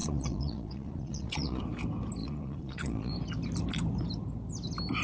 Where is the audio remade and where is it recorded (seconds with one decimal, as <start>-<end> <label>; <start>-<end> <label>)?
0.0-1.6 remade; 1.6-2.2 recorded; 2.2-3.1 remade; 3.1-5.0 recorded